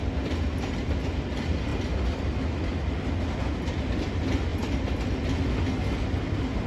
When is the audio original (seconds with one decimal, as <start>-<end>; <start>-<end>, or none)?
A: 0.0-6.7